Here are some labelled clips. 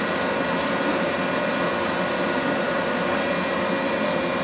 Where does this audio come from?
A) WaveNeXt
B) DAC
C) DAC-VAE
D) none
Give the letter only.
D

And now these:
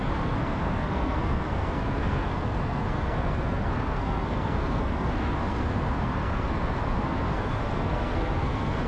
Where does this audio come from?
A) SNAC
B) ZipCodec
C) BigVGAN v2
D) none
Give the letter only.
A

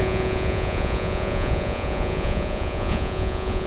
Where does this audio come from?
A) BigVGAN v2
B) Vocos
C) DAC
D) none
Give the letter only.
B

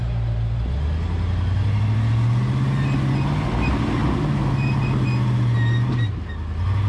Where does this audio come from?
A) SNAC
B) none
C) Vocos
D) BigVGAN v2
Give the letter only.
B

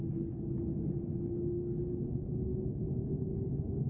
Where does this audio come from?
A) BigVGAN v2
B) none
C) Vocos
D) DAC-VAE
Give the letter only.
D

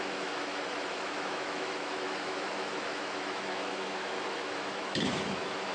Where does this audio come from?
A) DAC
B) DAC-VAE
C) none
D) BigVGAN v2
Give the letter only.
B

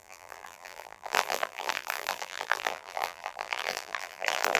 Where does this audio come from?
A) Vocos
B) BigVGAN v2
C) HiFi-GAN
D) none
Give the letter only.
B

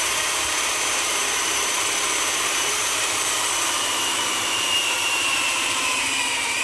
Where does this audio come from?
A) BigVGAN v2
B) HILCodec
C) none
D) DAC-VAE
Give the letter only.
A